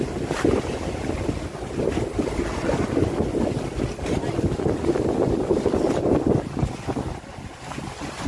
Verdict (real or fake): real